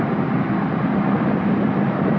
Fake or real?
real